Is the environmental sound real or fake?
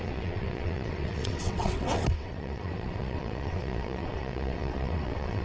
fake